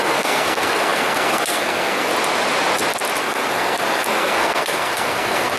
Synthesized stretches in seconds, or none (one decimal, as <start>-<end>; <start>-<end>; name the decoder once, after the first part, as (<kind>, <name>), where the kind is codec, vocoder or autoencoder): 0.0-2.1 (codec, SNAC); 3.2-5.6